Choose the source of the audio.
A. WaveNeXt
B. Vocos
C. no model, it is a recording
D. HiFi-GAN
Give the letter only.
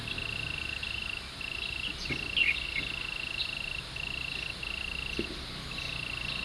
C